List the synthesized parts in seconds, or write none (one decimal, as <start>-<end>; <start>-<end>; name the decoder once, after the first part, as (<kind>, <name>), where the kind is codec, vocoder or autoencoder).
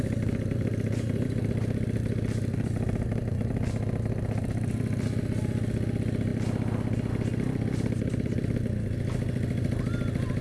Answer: none